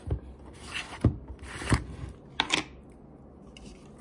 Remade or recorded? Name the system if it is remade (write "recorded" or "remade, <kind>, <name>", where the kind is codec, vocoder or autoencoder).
recorded